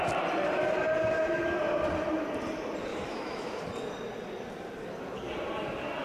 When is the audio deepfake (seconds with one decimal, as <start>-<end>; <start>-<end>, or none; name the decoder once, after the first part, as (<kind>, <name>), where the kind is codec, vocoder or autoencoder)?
2.9-3.6 (autoencoder, DAC-VAE)